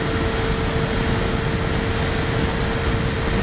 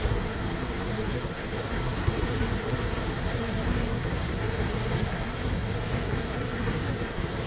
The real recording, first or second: first